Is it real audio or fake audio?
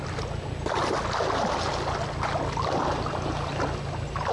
real